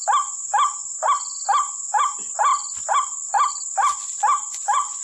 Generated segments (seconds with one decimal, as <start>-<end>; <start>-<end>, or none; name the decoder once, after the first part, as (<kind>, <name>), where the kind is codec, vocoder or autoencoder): none